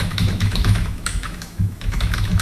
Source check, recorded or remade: remade